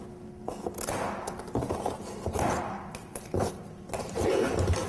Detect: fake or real real